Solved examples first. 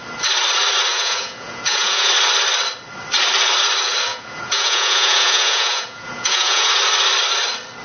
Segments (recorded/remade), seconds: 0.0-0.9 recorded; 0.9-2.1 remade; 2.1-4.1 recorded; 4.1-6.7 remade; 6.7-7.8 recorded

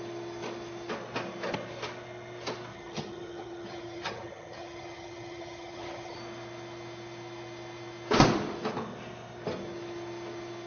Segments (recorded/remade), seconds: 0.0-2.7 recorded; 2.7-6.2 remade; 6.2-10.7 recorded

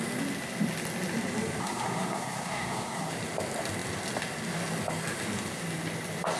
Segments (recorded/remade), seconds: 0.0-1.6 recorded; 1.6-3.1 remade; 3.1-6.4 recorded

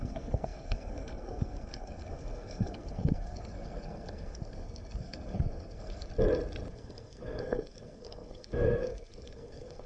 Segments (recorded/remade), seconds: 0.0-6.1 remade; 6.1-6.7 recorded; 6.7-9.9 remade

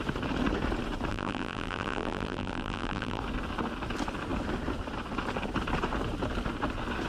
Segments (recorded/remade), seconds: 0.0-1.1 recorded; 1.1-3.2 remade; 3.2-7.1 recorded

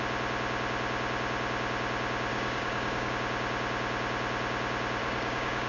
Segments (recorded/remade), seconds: 0.0-2.3 recorded; 2.3-3.1 remade; 3.1-5.0 recorded; 5.0-5.7 remade

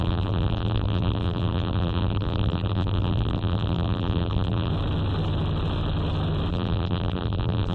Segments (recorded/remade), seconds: 0.0-4.7 remade; 4.7-6.5 recorded; 6.5-7.7 remade